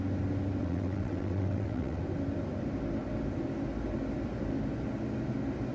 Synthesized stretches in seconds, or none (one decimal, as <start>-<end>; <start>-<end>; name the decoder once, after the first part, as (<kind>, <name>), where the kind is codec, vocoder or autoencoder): 0.6-2.0 (vocoder, WaveNeXt)